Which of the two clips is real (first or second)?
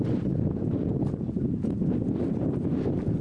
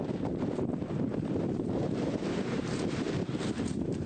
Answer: first